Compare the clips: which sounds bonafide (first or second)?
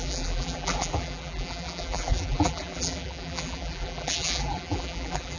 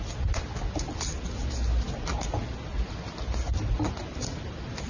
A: second